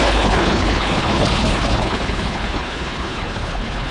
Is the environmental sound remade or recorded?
remade